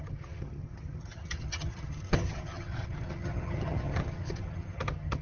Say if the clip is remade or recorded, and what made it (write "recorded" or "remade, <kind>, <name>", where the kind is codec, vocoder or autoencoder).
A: remade, vocoder, HiFi-GAN